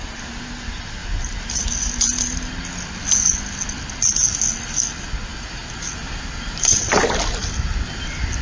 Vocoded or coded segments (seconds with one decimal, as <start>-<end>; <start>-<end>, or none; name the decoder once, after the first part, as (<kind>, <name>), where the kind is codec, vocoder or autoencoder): 0.0-0.6 (vocoder, BigVGAN v2); 5.3-7.5